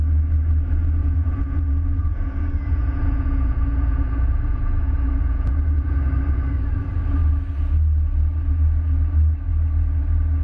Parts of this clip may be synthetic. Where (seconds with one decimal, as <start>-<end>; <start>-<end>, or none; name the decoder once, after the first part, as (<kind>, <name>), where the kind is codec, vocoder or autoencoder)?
1.0-6.1 (vocoder, Vocos)